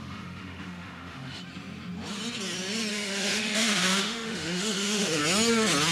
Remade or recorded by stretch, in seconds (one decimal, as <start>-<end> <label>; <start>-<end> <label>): 0.0-1.4 remade; 1.4-2.9 recorded; 2.9-5.2 remade; 5.2-5.9 recorded